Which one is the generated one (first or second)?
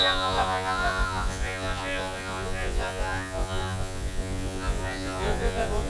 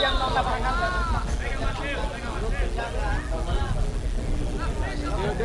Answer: first